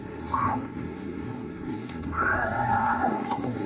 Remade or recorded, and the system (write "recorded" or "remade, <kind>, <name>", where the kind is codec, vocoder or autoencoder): remade, codec, SNAC